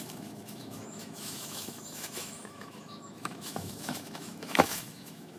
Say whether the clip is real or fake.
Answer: fake